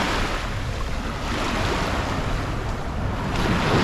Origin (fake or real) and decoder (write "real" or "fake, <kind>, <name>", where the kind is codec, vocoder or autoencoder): real